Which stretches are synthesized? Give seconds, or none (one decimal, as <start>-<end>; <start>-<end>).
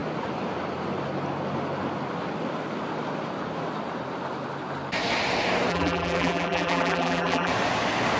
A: 5.7-7.5